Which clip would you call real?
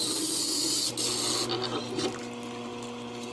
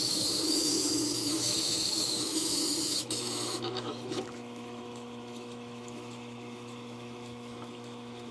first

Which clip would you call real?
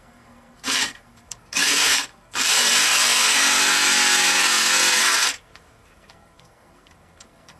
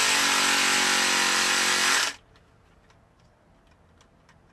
second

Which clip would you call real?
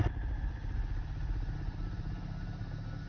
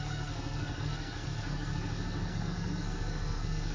first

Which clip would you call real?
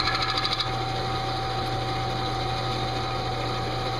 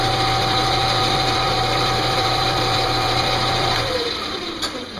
first